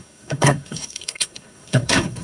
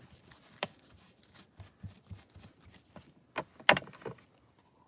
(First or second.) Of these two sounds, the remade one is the first